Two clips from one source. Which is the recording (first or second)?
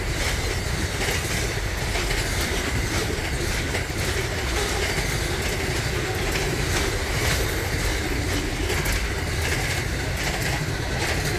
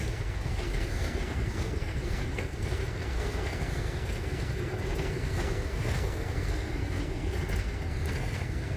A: first